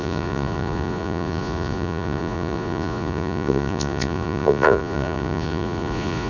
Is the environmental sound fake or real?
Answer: fake